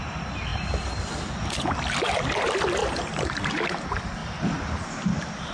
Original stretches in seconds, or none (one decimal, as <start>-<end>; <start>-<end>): 0.0-2.8; 3.5-5.5